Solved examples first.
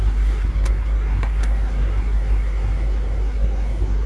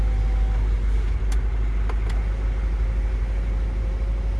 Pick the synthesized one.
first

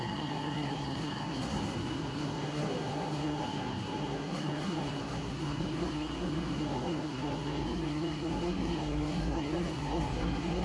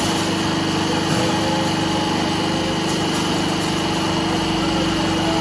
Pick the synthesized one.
first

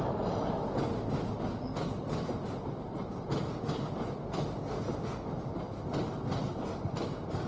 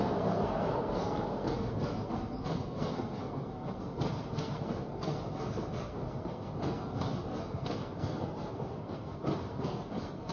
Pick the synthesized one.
second